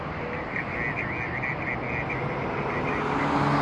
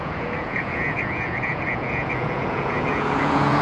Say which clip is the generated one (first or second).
second